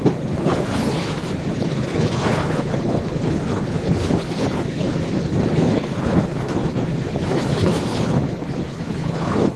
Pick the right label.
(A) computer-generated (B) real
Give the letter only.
A